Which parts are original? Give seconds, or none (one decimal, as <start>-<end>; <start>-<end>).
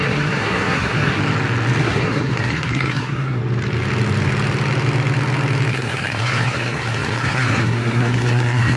1.2-1.8; 3.4-5.7